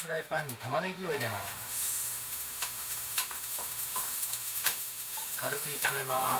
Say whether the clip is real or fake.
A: fake